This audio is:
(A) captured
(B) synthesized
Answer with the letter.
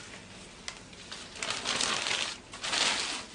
A